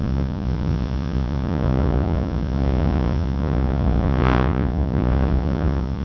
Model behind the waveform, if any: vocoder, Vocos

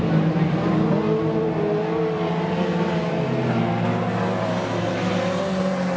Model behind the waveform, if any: none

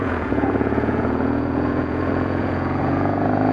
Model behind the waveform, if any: vocoder, Vocos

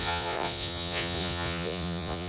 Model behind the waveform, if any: vocoder, Vocos